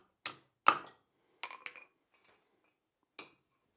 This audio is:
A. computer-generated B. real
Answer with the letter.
B